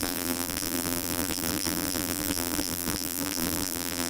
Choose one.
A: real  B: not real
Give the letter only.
B